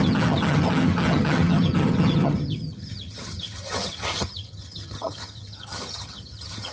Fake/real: fake